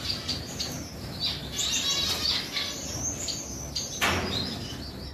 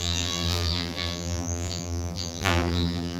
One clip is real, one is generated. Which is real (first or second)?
first